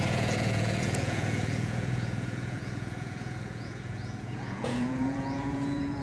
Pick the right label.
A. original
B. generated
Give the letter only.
B